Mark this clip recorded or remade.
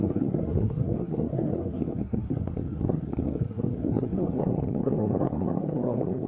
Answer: remade